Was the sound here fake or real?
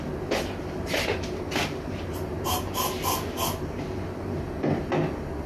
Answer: real